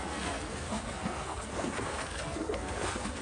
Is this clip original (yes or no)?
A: no